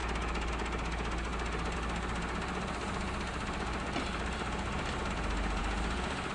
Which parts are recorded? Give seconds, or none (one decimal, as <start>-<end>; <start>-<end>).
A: 0.0-6.3